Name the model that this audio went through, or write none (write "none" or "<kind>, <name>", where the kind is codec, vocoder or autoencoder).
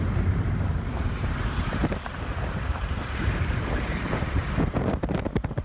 vocoder, BigVGAN v2